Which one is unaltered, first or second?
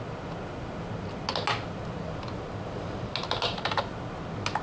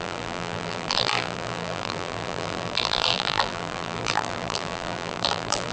first